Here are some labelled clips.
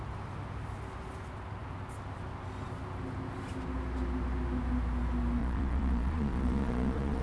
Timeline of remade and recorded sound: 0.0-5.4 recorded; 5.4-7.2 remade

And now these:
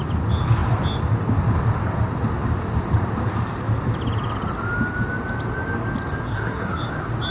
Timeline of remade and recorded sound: 0.0-6.3 recorded; 6.3-6.8 remade; 6.8-7.3 recorded

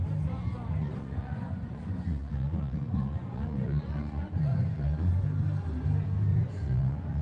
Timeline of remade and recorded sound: 0.0-0.8 recorded; 0.8-5.1 remade; 5.1-6.3 recorded; 6.3-7.2 remade

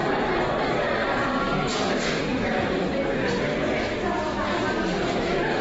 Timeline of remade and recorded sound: 0.0-2.3 recorded; 2.3-3.0 remade; 3.0-5.6 recorded

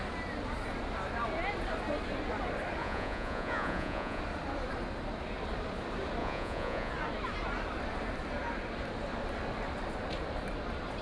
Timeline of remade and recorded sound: 0.0-2.8 recorded; 2.8-4.2 remade; 4.2-6.2 recorded; 6.2-6.9 remade; 6.9-11.0 recorded